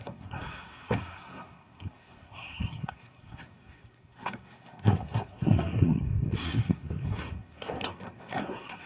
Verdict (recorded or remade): remade